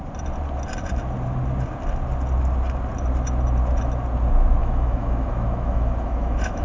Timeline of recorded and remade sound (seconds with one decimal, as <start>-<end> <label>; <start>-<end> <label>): 0.0-4.6 recorded; 4.6-6.6 remade